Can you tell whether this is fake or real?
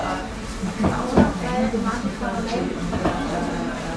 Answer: fake